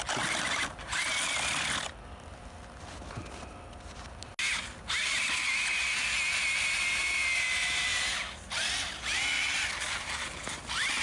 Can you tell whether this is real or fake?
real